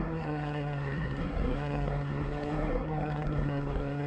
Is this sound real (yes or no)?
no